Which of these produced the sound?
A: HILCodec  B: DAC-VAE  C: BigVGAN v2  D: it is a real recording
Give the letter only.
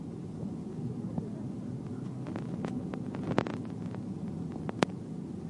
D